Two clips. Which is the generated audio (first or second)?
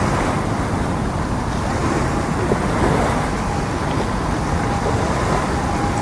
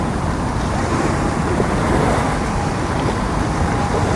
second